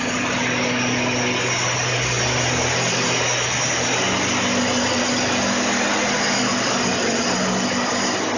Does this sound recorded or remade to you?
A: recorded